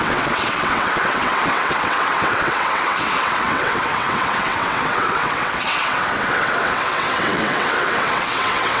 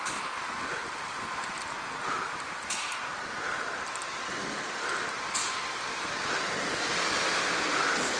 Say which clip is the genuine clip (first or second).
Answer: second